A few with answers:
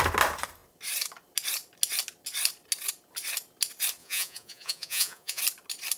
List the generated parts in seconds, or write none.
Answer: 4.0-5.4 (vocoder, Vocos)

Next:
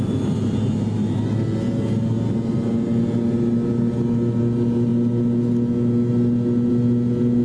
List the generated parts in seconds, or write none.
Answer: none